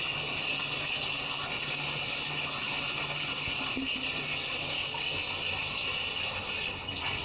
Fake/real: real